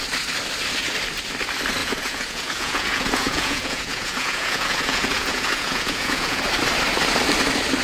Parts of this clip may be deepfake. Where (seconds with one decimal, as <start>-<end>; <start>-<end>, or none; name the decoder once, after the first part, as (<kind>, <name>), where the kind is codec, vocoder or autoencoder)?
1.8-6.4 (vocoder, Vocos)